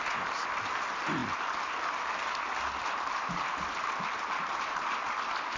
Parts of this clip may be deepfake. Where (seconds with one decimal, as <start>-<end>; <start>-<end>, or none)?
none